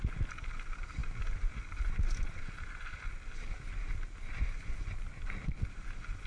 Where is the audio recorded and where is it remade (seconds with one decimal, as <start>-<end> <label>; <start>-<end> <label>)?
0.0-6.3 recorded